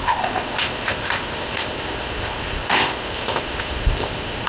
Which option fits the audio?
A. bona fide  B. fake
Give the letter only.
B